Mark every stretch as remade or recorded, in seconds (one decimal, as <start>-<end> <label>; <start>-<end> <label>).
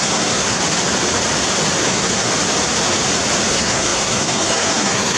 0.0-0.6 remade; 0.6-1.8 recorded; 1.8-2.3 remade; 2.3-3.5 recorded; 3.5-5.2 remade